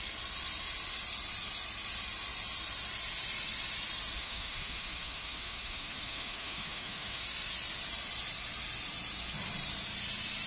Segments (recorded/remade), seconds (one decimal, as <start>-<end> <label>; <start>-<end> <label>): 0.0-4.2 recorded; 4.2-7.2 remade; 7.2-10.5 recorded